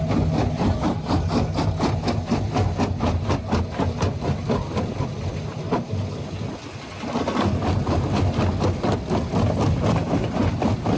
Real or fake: real